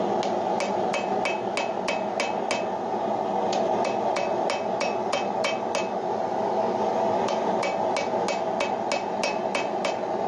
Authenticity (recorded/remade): recorded